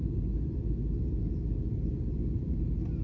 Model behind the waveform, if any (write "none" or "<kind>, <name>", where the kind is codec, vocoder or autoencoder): none